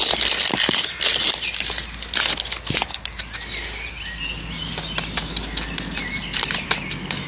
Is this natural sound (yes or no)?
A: yes